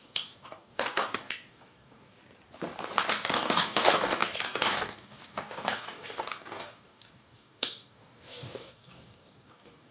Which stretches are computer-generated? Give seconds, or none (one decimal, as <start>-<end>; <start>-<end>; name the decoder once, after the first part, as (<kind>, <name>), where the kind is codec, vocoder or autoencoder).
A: 0.0-2.2 (codec, DAC); 3.1-9.9